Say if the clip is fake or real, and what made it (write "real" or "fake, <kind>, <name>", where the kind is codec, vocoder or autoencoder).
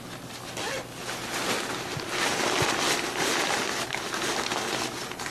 real